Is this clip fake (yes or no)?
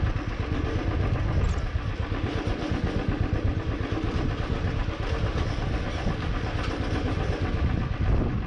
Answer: no